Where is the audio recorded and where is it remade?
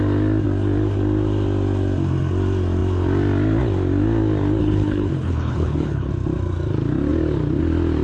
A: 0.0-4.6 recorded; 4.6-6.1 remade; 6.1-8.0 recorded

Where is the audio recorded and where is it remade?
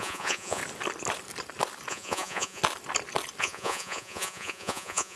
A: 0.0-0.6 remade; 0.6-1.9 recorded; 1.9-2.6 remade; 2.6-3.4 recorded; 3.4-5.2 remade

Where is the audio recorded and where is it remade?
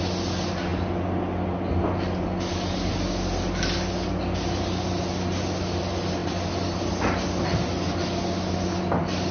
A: 0.0-9.3 recorded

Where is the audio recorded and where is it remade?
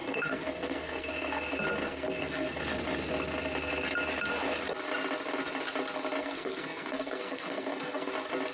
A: 0.0-1.1 remade; 1.1-1.8 recorded; 1.8-2.6 remade; 2.6-6.2 recorded; 6.2-8.1 remade; 8.1-8.5 recorded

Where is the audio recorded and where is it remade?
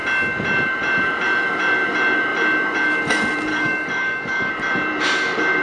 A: 0.0-3.5 recorded; 3.5-4.5 remade; 4.5-5.6 recorded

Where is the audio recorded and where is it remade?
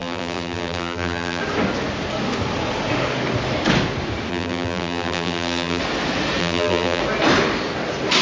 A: 0.0-1.4 remade; 1.4-4.3 recorded; 4.3-5.8 remade; 5.8-6.4 recorded; 6.4-7.0 remade; 7.0-8.2 recorded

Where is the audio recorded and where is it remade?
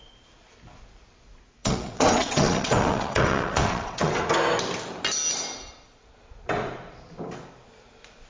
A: 0.0-1.6 recorded; 1.6-4.2 remade; 4.2-8.3 recorded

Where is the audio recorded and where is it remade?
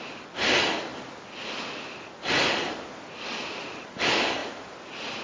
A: 0.0-5.2 recorded